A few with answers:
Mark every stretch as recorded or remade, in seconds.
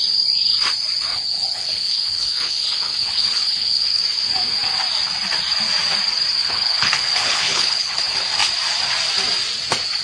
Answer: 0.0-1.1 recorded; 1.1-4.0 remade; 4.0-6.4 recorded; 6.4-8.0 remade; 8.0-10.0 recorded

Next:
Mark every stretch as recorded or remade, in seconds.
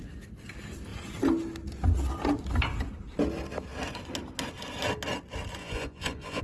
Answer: 0.0-5.6 recorded; 5.6-6.4 remade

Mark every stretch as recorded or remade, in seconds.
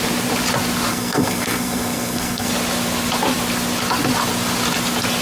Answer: 0.0-0.9 recorded; 0.9-2.5 remade; 2.5-5.2 recorded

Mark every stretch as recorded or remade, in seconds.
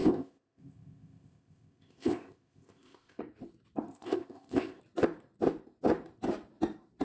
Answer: 0.0-3.2 remade; 3.2-3.9 recorded; 3.9-4.8 remade; 4.8-7.0 recorded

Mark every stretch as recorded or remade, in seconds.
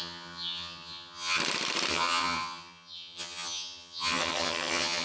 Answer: 0.0-1.4 remade; 1.4-1.9 recorded; 1.9-5.0 remade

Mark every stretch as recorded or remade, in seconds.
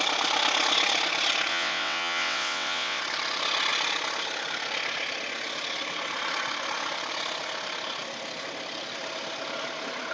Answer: 0.0-1.5 recorded; 1.5-3.0 remade; 3.0-10.1 recorded